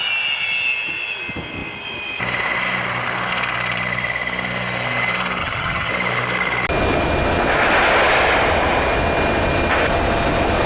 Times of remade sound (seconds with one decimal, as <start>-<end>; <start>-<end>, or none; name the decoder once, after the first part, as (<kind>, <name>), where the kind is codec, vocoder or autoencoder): 5.4-5.9 (vocoder, HiFi-GAN)